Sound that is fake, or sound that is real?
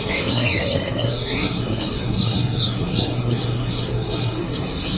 fake